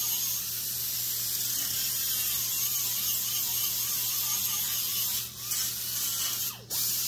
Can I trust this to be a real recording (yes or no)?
yes